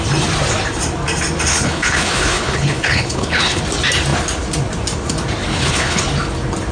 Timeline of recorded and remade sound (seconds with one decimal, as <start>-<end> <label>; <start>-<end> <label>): 0.0-1.5 recorded; 1.5-3.6 remade; 3.6-5.5 recorded; 5.5-6.0 remade; 6.0-6.7 recorded